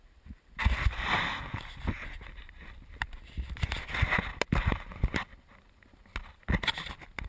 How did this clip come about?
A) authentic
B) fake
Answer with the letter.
A